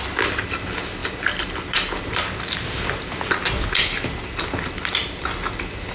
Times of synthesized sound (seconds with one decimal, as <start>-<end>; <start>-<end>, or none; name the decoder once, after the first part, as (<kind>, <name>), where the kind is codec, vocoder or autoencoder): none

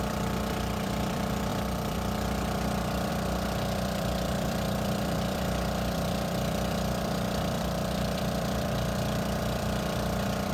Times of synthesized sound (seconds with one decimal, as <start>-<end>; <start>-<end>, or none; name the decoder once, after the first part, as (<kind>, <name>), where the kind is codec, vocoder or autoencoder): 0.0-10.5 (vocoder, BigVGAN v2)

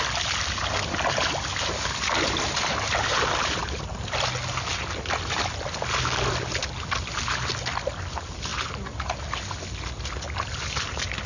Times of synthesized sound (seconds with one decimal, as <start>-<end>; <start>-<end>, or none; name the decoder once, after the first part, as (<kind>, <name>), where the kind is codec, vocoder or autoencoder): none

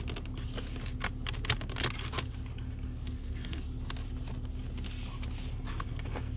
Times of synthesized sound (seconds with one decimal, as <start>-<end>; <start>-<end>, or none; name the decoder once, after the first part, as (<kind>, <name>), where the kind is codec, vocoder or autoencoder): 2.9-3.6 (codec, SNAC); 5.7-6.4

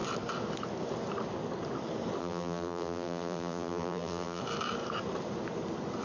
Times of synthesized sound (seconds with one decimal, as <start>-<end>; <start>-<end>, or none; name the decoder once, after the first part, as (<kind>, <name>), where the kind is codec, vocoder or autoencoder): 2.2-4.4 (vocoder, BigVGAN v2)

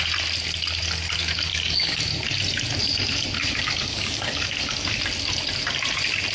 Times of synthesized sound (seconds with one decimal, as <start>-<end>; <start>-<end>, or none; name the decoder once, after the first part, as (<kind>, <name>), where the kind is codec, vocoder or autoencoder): 1.5-2.0 (codec, DAC); 3.4-5.0

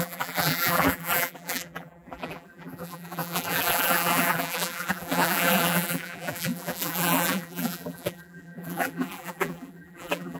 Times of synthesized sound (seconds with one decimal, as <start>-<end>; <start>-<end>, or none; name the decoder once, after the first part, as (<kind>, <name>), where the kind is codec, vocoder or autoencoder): 0.0-10.4 (vocoder, BigVGAN v2)

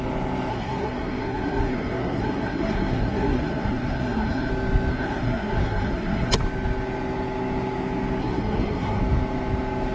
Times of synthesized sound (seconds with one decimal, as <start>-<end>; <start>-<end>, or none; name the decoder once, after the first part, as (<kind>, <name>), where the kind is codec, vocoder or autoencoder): 0.5-4.5 (codec, SNAC); 4.9-6.3; 8.2-9.0